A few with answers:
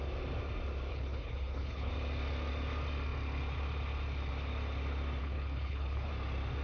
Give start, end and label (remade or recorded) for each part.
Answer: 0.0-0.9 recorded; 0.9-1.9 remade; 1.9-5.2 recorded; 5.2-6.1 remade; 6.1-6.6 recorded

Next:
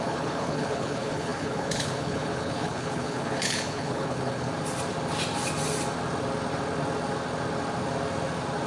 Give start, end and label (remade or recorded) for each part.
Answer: 0.0-4.5 remade; 4.5-8.7 recorded

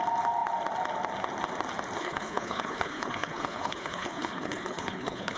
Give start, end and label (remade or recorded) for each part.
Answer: 0.0-2.0 recorded; 2.0-5.4 remade

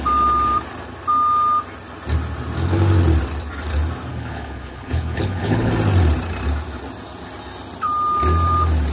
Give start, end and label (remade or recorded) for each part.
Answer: 0.0-4.1 recorded; 4.1-5.7 remade; 5.7-8.9 recorded

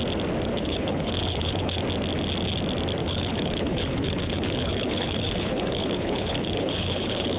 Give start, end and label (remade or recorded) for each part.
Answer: 0.0-0.5 recorded; 0.5-1.8 remade; 1.8-3.0 recorded; 3.0-7.4 remade

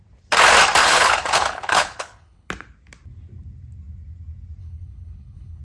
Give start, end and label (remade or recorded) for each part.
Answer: 0.0-0.8 recorded; 0.8-2.5 remade; 2.5-4.6 recorded; 4.6-5.6 remade

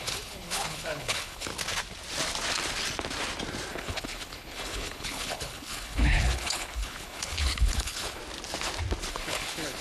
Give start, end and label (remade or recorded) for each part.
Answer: 0.0-1.5 remade; 1.5-3.7 recorded; 3.7-8.2 remade; 8.2-9.1 recorded; 9.1-9.8 remade

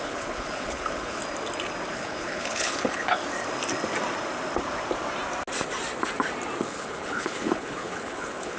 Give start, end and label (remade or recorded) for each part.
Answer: 0.0-1.2 remade; 1.2-1.9 recorded; 1.9-3.2 remade; 3.2-6.6 recorded; 6.6-8.6 remade